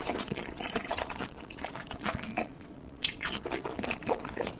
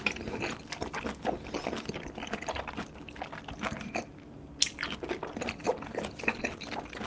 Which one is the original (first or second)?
second